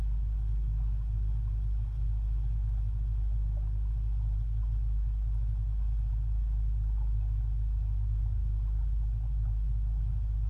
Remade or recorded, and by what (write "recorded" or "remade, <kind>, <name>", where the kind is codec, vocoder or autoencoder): recorded